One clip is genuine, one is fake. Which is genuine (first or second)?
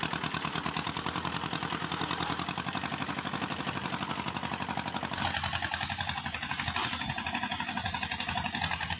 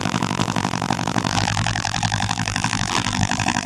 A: first